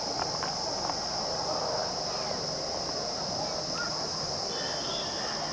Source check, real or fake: real